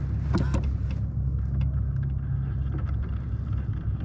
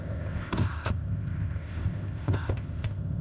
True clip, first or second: first